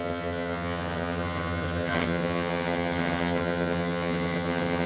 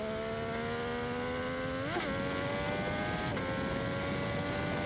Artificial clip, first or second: first